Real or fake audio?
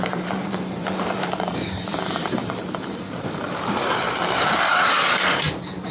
fake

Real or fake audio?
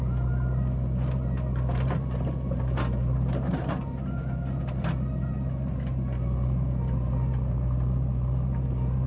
real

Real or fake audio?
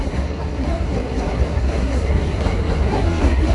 fake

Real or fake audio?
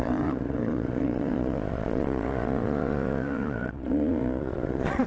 fake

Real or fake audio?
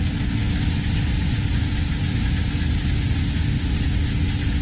real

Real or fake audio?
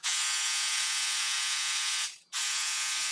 fake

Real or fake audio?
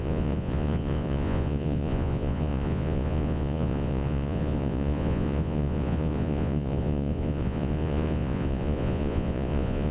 fake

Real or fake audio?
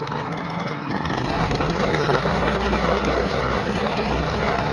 fake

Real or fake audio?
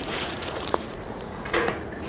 fake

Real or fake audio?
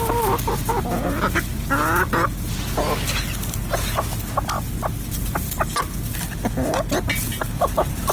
real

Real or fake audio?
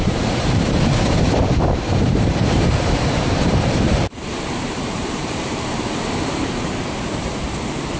fake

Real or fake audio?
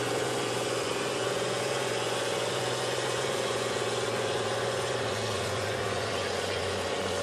fake